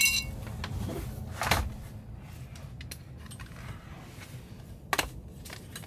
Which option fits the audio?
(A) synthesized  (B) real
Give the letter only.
B